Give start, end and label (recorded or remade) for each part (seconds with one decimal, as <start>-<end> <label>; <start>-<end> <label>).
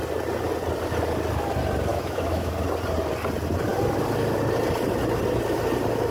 0.0-1.9 recorded; 1.9-2.5 remade; 2.5-6.1 recorded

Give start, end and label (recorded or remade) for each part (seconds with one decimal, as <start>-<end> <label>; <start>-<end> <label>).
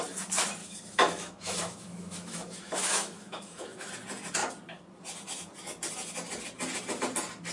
0.0-0.6 recorded; 0.6-3.9 remade; 3.9-7.5 recorded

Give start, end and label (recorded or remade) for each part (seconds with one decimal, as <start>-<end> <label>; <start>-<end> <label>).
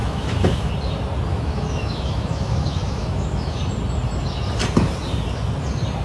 0.0-0.7 remade; 0.7-1.3 recorded; 1.3-3.6 remade; 3.6-6.0 recorded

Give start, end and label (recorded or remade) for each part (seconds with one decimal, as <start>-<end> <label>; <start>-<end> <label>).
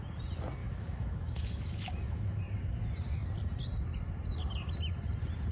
0.0-0.6 recorded; 0.6-2.4 remade; 2.4-5.5 recorded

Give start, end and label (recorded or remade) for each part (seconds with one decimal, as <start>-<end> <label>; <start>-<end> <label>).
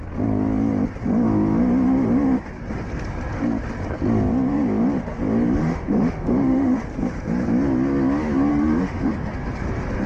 0.0-5.6 recorded; 5.6-6.8 remade; 6.8-8.5 recorded; 8.5-9.1 remade; 9.1-10.1 recorded